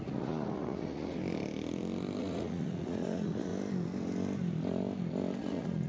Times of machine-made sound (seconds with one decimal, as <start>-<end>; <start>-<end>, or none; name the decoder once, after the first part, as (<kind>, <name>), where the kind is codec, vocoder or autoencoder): 0.0-1.2 (vocoder, Vocos); 2.2-3.5; 5.4-5.9